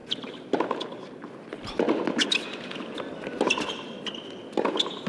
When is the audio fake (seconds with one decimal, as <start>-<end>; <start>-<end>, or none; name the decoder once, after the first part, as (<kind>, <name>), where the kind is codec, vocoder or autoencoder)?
none